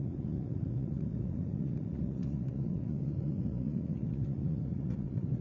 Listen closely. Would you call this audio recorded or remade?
remade